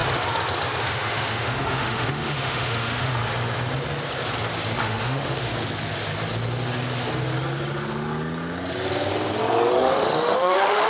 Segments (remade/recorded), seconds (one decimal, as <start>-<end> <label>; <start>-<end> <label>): 0.0-0.8 recorded; 0.8-3.2 remade; 3.2-4.8 recorded; 4.8-5.5 remade; 5.5-9.7 recorded; 9.7-10.9 remade